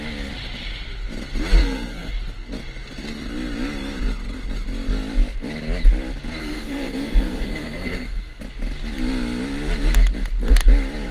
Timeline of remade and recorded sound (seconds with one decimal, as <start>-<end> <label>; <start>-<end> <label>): 0.0-1.6 recorded; 1.6-2.2 remade; 2.2-6.4 recorded; 6.4-8.4 remade; 8.4-11.1 recorded